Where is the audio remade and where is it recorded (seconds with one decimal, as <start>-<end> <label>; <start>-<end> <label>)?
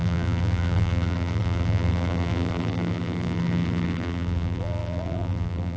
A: 0.0-5.8 remade